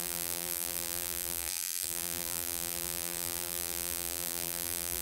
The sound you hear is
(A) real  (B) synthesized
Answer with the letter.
B